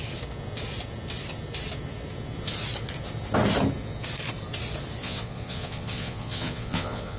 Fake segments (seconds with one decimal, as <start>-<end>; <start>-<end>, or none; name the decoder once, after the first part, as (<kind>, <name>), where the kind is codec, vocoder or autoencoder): 5.0-7.2 (vocoder, Vocos)

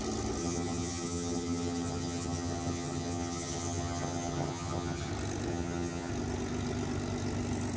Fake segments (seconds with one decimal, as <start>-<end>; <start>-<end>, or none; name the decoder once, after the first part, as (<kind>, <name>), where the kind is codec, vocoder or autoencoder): 0.4-5.1 (vocoder, HiFi-GAN); 5.5-6.1

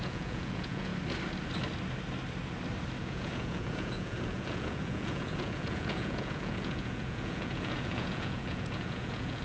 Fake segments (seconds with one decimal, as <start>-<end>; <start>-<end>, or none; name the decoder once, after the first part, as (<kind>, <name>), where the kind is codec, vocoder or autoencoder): 0.0-0.9 (vocoder, Vocos); 3.0-9.4

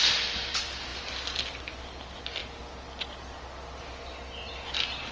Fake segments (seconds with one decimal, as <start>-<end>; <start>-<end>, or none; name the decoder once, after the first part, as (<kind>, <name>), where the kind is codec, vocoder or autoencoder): none

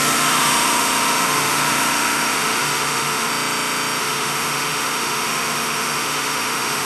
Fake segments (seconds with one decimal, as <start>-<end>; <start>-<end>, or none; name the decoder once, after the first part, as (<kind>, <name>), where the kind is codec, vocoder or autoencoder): 0.0-3.3 (autoencoder, DAC-VAE); 4.0-6.8